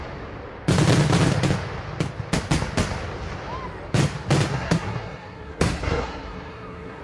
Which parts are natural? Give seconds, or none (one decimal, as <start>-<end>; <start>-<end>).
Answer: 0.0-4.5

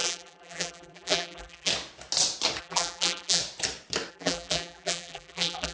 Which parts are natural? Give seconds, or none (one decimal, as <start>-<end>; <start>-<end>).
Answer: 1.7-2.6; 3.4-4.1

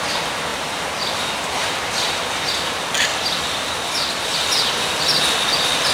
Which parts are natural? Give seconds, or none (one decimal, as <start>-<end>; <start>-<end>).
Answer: 0.0-0.5; 2.3-3.1

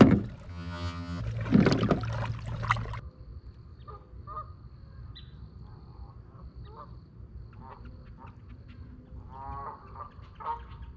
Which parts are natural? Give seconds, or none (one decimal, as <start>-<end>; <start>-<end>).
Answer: 0.0-0.5; 1.2-11.0

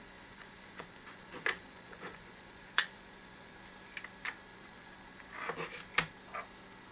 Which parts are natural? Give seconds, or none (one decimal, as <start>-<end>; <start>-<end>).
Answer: 3.5-4.5; 5.2-6.9

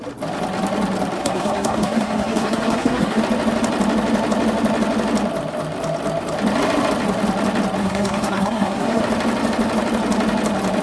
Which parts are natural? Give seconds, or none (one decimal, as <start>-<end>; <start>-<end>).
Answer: 0.0-1.2; 3.2-7.8; 9.0-10.8

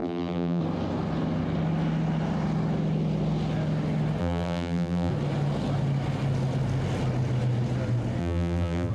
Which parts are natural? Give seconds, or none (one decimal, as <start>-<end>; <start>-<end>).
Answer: 0.6-4.2; 5.1-8.2

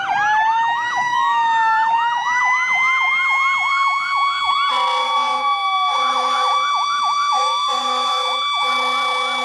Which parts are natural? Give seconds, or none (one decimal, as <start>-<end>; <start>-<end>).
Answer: 0.0-0.5; 2.4-3.7; 4.5-5.0; 8.7-9.4